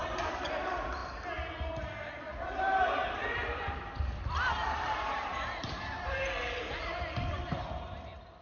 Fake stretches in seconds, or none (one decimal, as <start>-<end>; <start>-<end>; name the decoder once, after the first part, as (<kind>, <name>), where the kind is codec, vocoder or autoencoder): 0.0-1.0 (vocoder, BigVGAN v2); 2.2-8.4